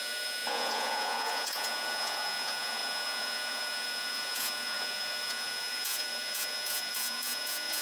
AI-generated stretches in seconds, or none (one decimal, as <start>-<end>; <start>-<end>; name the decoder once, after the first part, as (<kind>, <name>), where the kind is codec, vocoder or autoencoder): 0.0-7.8 (vocoder, Vocos)